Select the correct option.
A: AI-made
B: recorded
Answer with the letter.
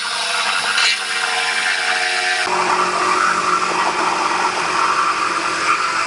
B